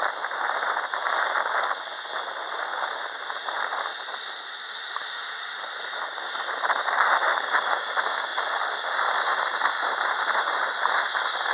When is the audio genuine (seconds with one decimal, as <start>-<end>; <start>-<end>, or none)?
3.9-4.8; 8.3-9.0